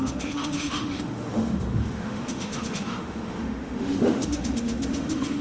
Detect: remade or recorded remade